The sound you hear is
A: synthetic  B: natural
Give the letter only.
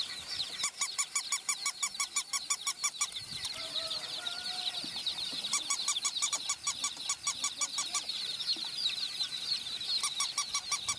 A